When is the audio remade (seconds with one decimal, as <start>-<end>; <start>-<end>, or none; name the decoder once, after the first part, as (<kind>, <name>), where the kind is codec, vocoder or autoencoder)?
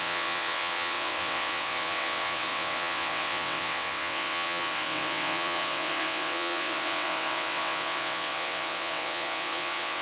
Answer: 0.0-10.0 (vocoder, WaveNeXt)